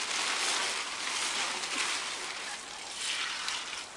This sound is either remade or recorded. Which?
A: recorded